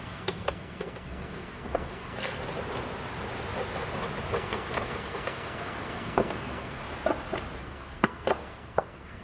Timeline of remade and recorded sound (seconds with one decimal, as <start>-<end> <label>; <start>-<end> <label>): 0.0-2.4 remade; 2.4-4.3 recorded; 4.3-6.8 remade; 6.8-7.6 recorded; 7.6-9.2 remade